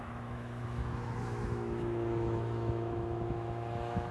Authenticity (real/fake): fake